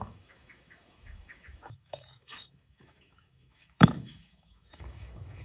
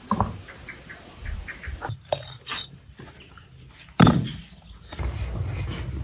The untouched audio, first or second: second